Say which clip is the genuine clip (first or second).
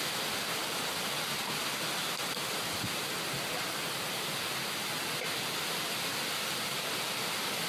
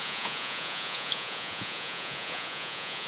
first